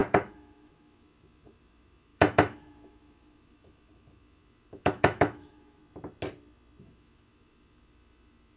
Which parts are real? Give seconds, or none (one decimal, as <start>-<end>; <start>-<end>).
5.8-6.8